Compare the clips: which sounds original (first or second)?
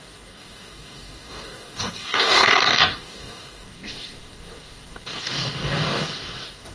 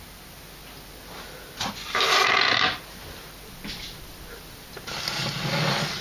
second